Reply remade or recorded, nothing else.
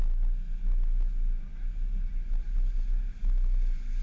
recorded